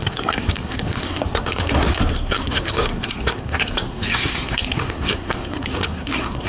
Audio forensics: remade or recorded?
remade